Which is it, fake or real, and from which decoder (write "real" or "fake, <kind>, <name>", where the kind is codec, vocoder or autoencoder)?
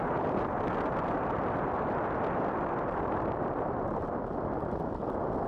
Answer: real